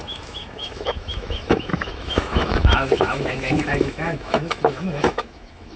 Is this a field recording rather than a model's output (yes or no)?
no